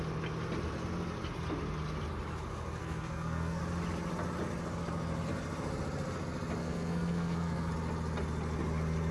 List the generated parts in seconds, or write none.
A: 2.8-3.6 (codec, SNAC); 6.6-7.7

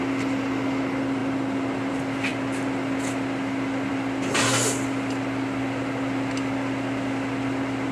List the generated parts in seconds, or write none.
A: none